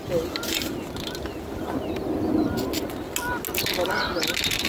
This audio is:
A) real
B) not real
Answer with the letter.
A